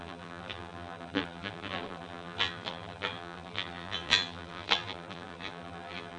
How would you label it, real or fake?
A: fake